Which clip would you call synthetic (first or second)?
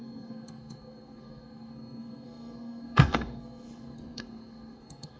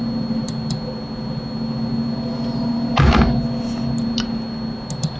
first